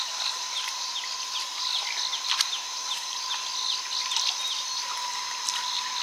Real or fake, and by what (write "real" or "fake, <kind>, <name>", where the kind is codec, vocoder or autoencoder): real